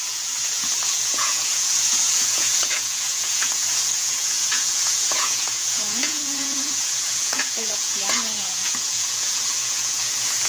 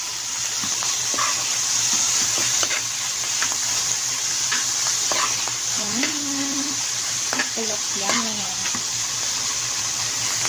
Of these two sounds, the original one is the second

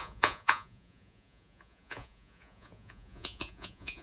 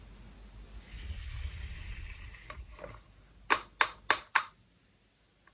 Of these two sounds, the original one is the second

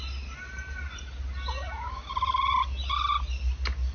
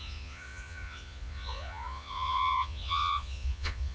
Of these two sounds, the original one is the first